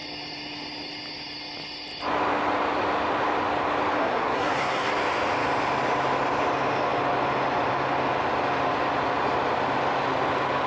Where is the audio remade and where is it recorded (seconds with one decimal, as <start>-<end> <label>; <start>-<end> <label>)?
0.0-4.0 recorded; 4.0-4.9 remade; 4.9-10.7 recorded